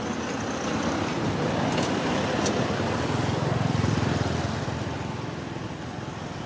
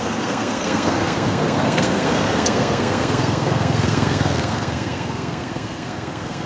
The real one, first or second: first